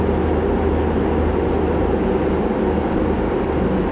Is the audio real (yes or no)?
yes